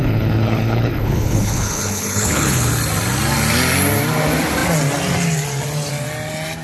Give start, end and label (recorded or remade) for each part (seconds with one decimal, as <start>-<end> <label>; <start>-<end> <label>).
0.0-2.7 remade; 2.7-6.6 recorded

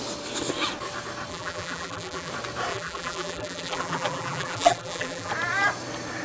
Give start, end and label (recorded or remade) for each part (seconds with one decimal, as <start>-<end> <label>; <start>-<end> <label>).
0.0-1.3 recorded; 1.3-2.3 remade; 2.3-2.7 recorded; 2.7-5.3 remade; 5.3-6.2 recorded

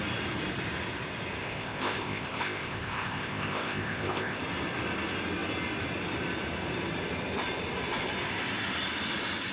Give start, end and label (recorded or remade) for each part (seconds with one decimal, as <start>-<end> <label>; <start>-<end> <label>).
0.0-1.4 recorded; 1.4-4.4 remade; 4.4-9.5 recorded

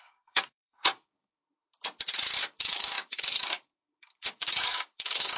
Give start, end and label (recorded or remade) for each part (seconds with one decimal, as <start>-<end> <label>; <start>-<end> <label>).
0.0-1.4 remade; 1.4-2.6 recorded; 2.6-5.4 remade

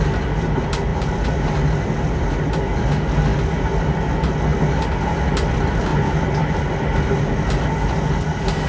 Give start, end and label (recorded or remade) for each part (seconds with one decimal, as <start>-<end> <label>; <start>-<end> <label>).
0.0-0.9 recorded; 0.9-1.5 remade; 1.5-8.7 recorded